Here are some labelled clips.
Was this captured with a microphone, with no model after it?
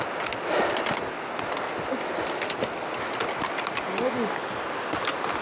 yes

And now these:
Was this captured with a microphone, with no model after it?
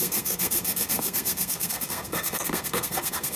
no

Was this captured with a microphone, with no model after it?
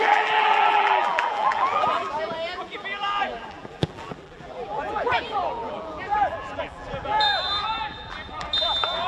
no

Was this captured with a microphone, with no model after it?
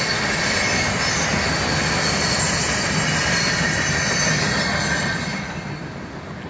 yes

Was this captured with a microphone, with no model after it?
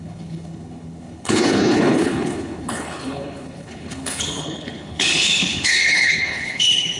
no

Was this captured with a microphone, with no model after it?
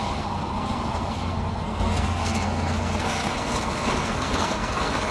no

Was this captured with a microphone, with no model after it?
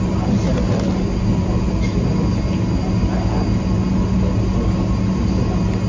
yes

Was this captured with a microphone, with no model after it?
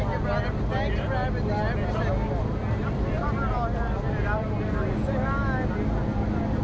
yes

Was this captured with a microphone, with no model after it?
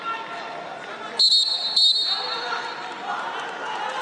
yes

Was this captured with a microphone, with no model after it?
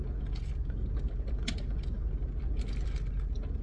yes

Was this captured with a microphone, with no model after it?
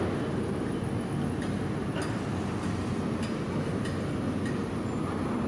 yes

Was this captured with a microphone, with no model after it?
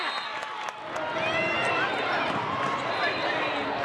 yes